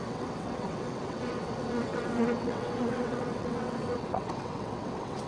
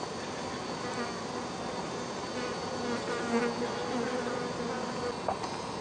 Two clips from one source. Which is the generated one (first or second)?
first